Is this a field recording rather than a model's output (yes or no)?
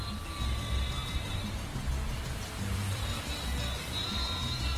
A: yes